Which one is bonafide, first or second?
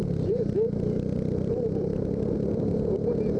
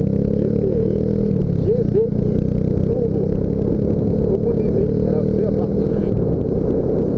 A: second